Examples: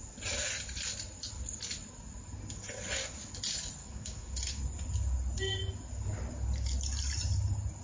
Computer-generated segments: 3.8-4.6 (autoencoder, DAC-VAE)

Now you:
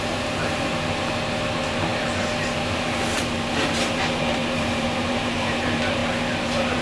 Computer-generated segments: 0.0-6.8 (vocoder, BigVGAN v2)

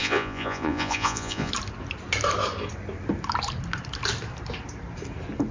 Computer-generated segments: 0.0-1.5 (vocoder, Vocos)

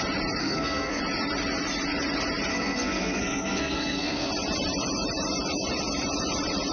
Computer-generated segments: 0.4-1.0 (codec, SNAC); 2.5-4.3

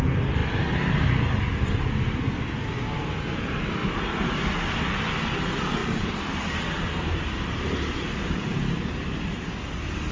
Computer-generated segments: 5.8-9.2 (vocoder, BigVGAN v2)

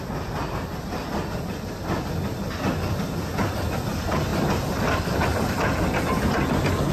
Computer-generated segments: 4.3-6.5 (vocoder, BigVGAN v2)

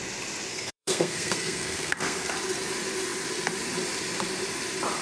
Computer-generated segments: 0.5-2.3 (codec, SNAC)